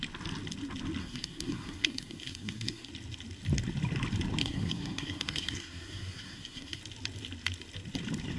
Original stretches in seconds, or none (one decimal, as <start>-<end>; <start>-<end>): 0.0-1.0; 2.9-4.4; 6.8-8.4